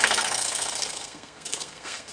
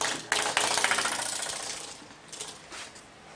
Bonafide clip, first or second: second